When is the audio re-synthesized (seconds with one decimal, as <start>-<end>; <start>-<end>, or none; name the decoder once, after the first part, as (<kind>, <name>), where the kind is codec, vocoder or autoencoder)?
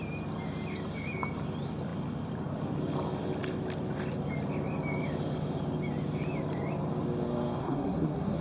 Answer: 7.6-8.4 (codec, SNAC)